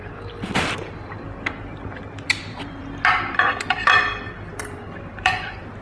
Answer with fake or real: fake